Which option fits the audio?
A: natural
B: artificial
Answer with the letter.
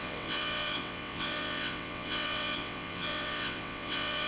B